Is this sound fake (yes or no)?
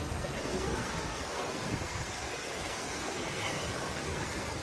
yes